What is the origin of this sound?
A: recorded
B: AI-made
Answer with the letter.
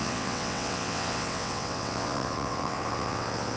B